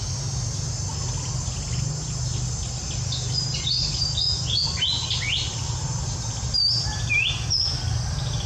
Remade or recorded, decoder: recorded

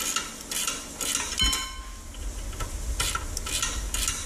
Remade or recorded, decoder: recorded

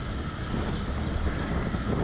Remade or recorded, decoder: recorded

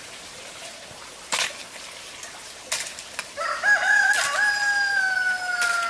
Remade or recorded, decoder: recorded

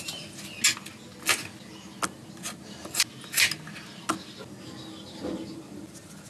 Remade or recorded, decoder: recorded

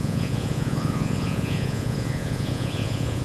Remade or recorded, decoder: remade, vocoder, Vocos